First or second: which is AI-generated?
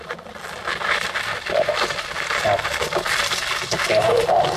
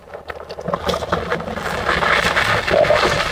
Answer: first